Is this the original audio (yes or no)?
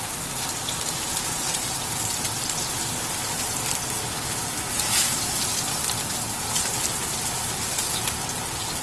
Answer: yes